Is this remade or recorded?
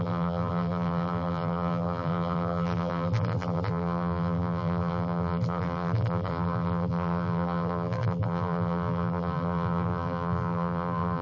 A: remade